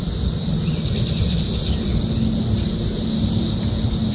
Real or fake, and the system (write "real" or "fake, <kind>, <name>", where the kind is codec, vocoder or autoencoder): real